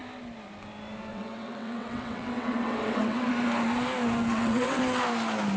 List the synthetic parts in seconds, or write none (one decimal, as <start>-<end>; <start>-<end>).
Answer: 1.1-3.3; 4.3-4.8